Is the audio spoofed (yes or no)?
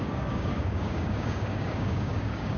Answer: yes